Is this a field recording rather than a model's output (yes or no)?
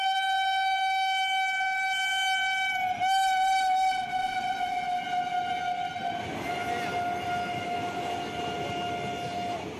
yes